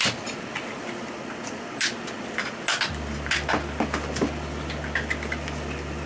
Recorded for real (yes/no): yes